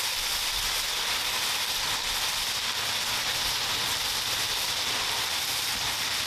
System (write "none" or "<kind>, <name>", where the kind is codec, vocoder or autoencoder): none